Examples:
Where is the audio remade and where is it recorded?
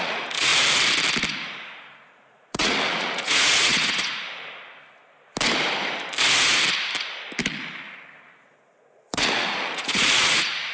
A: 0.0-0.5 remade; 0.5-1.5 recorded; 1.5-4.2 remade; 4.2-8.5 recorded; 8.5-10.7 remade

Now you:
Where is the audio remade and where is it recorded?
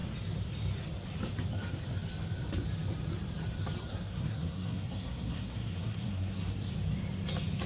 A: 0.0-3.9 recorded; 3.9-6.7 remade; 6.7-7.7 recorded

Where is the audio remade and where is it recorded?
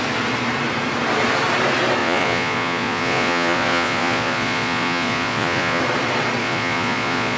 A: 0.0-2.0 recorded; 2.0-5.8 remade; 5.8-6.4 recorded; 6.4-7.4 remade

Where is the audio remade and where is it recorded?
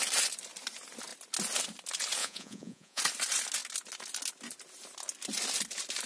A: 0.0-2.2 recorded; 2.2-3.0 remade; 3.0-6.1 recorded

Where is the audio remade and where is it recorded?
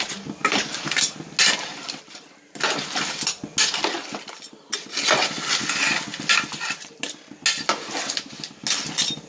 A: 0.0-0.4 recorded; 0.4-1.2 remade; 1.2-9.3 recorded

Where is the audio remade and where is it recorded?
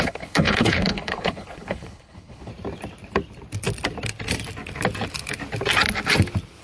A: 0.0-2.5 remade; 2.5-6.6 recorded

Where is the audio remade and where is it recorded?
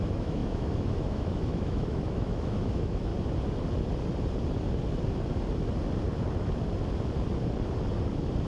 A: 0.0-3.1 remade; 3.1-8.5 recorded